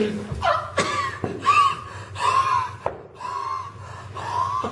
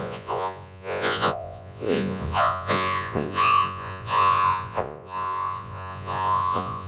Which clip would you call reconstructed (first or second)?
second